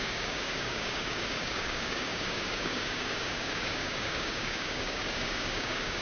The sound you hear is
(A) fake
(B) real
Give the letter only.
A